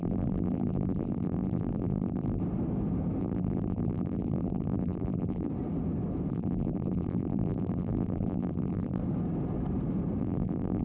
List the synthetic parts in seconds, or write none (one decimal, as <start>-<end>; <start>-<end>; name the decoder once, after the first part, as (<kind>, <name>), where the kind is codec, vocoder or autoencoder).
0.0-2.4 (vocoder, BigVGAN v2); 3.2-5.5; 6.3-9.0; 10.2-10.8